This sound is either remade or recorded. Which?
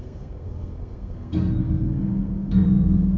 remade